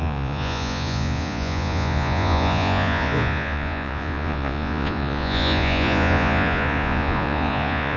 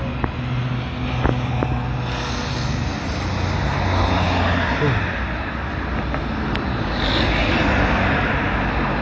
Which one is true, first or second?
second